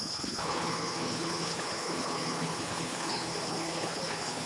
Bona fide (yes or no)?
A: no